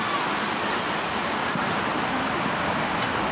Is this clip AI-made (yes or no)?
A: no